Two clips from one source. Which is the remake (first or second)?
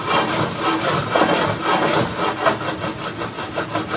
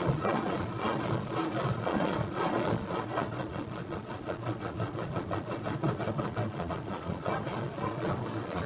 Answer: second